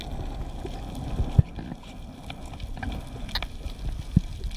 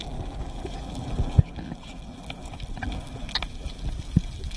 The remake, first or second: second